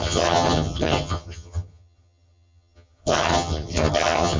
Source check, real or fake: fake